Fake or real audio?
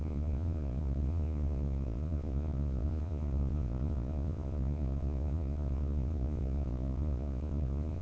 fake